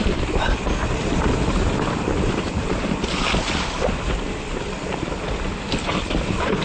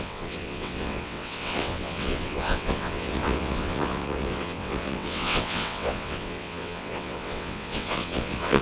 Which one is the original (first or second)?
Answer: first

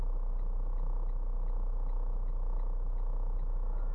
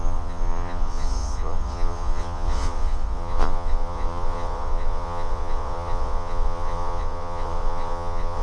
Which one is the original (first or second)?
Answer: first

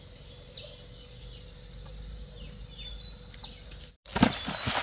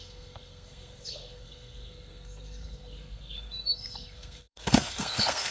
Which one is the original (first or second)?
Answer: first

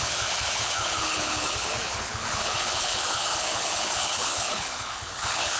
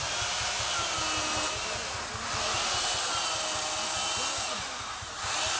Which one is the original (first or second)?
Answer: second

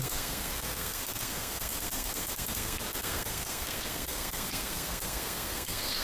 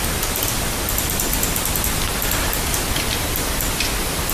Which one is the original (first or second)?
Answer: second